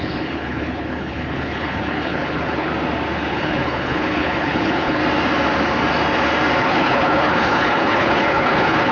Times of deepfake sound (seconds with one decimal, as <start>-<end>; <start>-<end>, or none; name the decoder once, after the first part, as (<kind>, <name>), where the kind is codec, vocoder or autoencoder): 0.0-2.7 (codec, HILCodec); 3.3-5.0; 6.6-8.9